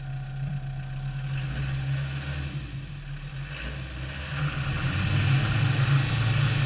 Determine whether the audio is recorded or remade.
recorded